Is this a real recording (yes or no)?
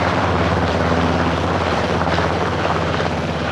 no